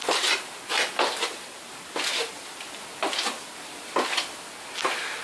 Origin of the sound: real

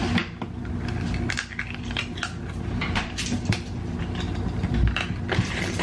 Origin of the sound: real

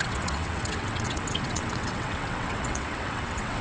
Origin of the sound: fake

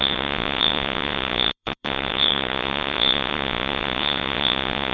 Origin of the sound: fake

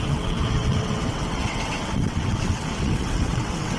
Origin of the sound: fake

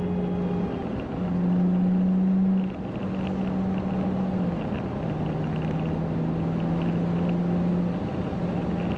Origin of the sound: real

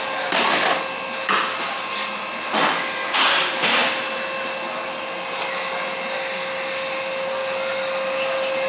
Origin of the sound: real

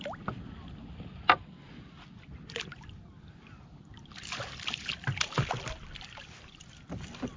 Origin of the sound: real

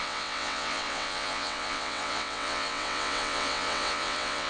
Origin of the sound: fake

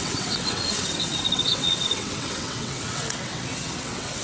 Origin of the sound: fake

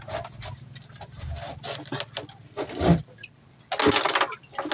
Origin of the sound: real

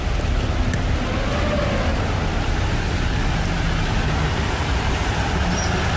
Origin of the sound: real